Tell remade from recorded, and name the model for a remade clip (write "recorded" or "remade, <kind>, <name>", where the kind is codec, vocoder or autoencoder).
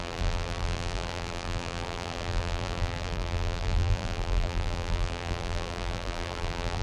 remade, vocoder, BigVGAN v2